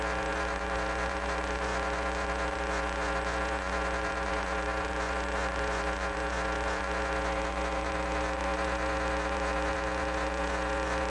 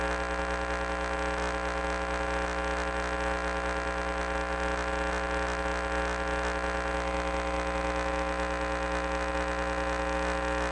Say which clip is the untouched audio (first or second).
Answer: second